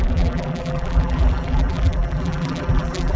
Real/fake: fake